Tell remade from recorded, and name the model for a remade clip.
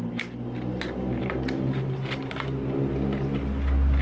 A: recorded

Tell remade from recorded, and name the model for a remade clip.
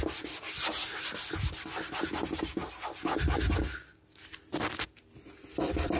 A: remade, vocoder, BigVGAN v2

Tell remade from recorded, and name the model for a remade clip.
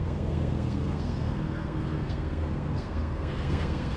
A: remade, codec, SNAC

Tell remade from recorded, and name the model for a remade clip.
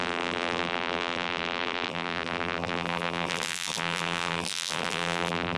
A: remade, vocoder, BigVGAN v2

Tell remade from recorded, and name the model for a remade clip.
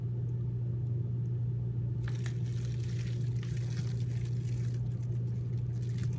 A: recorded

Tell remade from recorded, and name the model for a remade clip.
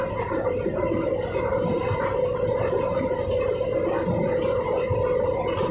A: recorded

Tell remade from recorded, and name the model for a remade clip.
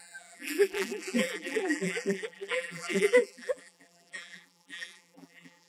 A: remade, vocoder, BigVGAN v2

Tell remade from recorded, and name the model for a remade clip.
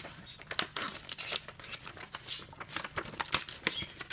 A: recorded